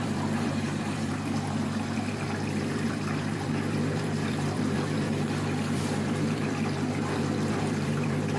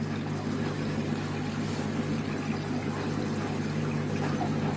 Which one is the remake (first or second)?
first